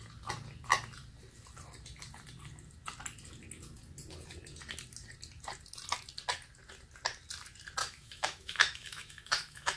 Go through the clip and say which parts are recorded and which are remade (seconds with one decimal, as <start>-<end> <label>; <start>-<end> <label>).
0.0-7.8 recorded; 7.8-9.8 remade

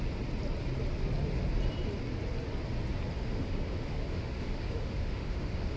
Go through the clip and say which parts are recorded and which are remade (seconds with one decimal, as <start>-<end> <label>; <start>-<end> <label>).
0.0-3.2 recorded; 3.2-5.8 remade

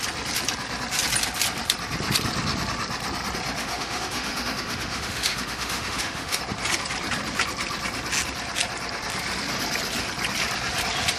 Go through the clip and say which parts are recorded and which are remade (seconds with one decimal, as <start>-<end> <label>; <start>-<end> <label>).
0.0-3.6 recorded; 3.6-6.4 remade; 6.4-11.2 recorded

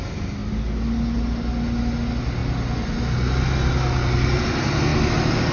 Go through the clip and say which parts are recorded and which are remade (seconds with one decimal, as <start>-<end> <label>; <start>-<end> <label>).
0.0-5.5 recorded